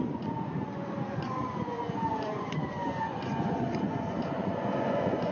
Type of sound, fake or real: fake